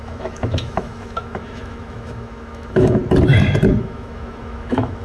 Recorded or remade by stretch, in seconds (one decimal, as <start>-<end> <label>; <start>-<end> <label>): 0.0-3.0 remade; 3.0-3.8 recorded; 3.8-5.0 remade